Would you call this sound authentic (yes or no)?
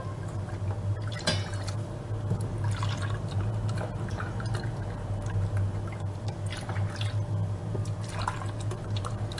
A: yes